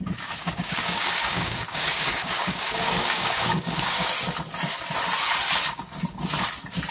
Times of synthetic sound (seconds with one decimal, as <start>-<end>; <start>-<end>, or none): 0.4-4.1